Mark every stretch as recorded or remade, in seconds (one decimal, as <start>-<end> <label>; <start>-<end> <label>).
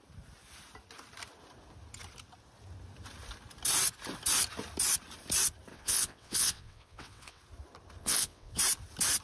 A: 0.0-5.7 recorded; 5.7-7.4 remade; 7.4-8.0 recorded; 8.0-8.6 remade; 8.6-9.2 recorded